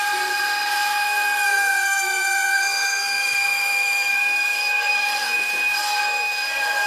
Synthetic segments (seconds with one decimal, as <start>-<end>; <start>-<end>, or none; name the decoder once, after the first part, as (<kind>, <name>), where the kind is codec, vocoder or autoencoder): 0.0-6.9 (codec, SNAC)